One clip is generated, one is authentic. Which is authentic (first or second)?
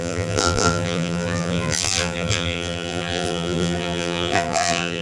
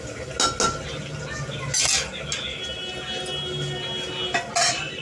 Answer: second